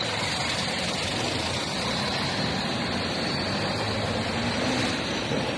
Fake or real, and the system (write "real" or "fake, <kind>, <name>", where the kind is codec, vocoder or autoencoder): fake, vocoder, BigVGAN v2